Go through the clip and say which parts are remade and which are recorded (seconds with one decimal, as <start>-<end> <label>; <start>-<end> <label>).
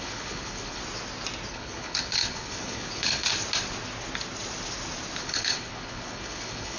0.0-0.8 remade; 0.8-1.5 recorded; 1.5-3.3 remade; 3.3-5.2 recorded; 5.2-6.8 remade